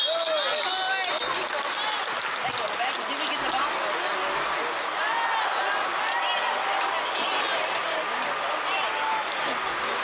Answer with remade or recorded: recorded